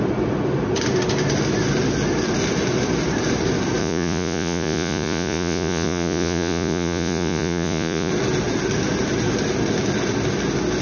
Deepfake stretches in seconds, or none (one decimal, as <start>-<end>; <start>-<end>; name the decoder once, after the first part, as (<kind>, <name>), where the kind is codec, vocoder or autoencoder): 3.8-8.1 (vocoder, Vocos)